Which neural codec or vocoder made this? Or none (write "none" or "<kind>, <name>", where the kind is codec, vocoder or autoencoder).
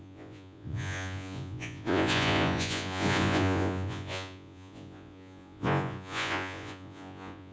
vocoder, Vocos